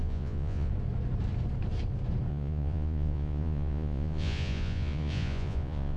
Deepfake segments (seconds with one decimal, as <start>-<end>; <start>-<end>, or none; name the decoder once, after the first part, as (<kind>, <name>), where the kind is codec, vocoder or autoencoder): 0.0-0.7 (vocoder, Vocos); 2.3-6.0